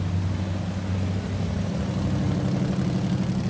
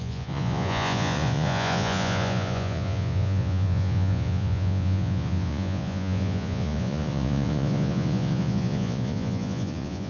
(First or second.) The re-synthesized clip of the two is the second